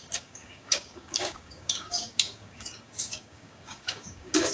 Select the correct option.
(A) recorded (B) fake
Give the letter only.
B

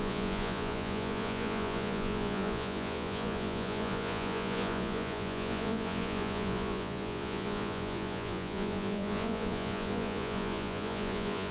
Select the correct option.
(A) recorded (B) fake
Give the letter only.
B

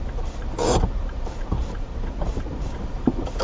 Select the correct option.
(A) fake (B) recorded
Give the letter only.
A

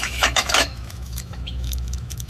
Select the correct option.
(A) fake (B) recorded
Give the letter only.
A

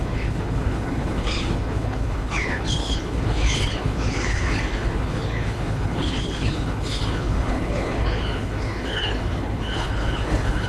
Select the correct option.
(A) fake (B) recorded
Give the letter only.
A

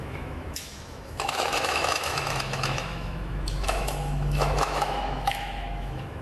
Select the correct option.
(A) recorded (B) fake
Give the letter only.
B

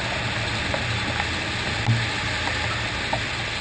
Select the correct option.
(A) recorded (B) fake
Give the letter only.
A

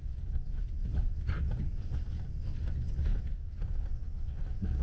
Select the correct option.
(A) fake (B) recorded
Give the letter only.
B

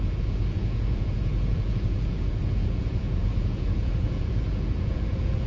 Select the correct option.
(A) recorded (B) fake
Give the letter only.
B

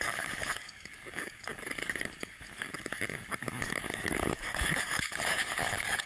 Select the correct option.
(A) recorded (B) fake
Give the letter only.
B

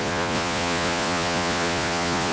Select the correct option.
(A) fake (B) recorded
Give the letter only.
A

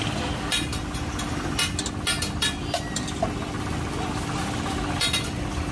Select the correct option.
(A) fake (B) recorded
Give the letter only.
B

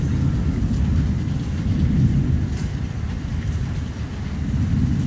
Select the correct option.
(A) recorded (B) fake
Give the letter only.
A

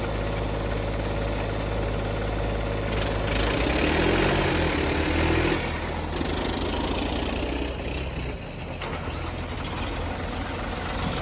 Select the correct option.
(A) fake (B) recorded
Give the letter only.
B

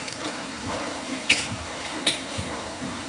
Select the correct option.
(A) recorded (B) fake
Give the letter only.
B